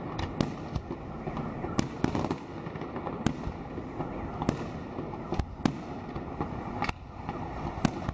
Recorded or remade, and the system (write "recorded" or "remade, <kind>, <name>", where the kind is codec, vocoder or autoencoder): recorded